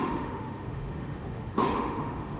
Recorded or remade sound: remade